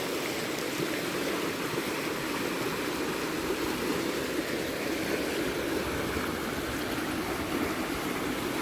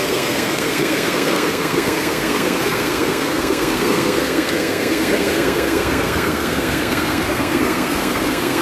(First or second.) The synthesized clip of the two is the second